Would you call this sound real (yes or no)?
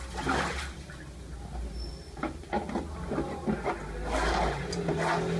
yes